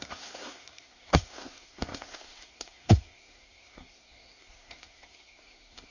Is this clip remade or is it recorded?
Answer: remade